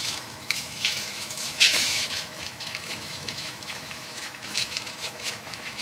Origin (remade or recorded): remade